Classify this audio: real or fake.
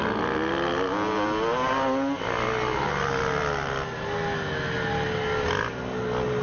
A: real